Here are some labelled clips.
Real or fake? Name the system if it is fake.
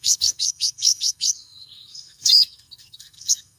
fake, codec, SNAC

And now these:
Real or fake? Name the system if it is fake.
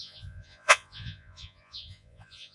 fake, vocoder, Vocos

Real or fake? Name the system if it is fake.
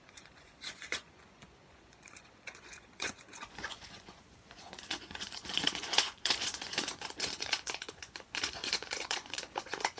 fake, vocoder, Vocos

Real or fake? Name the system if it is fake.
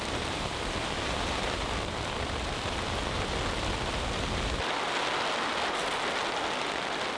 real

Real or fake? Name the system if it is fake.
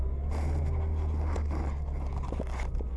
real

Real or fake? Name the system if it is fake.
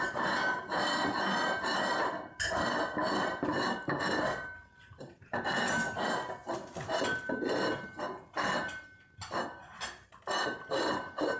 real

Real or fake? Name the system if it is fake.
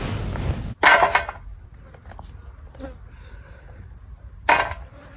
real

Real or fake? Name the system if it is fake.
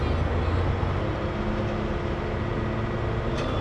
real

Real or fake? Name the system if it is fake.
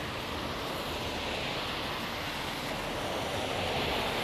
real